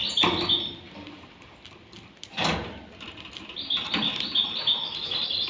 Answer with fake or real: real